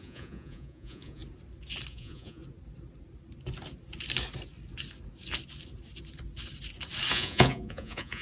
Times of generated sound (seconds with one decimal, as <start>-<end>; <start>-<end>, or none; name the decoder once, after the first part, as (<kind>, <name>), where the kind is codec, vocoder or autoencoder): 0.0-1.2 (vocoder, Vocos); 1.9-2.4; 7.1-8.2